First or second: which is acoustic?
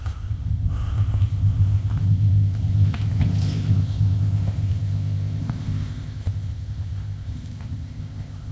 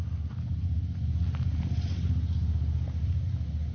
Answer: second